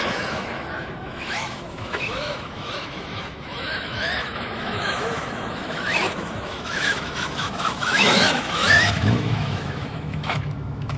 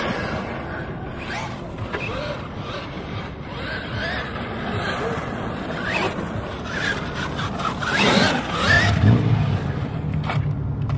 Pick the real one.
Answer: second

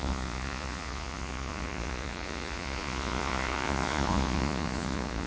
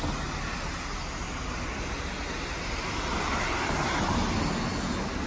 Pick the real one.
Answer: second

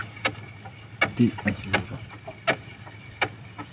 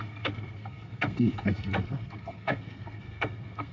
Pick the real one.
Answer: first